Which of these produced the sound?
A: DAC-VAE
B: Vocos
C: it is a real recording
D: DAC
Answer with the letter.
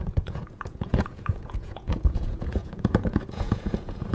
B